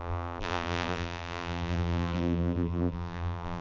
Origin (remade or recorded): remade